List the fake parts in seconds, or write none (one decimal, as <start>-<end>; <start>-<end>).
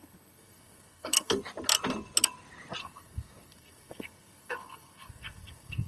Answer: 0.0-1.4; 2.8-5.9